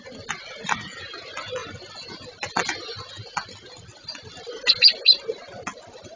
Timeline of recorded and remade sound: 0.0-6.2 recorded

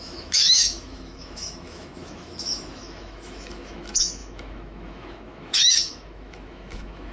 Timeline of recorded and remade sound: 0.0-7.1 remade

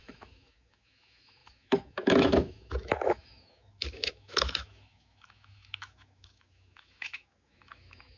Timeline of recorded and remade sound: 0.0-8.2 remade